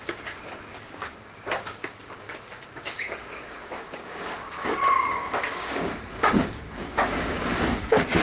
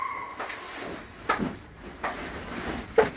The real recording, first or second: second